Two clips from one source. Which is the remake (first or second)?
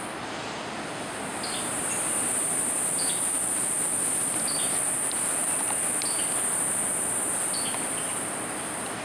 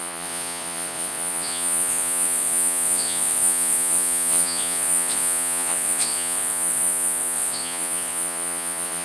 second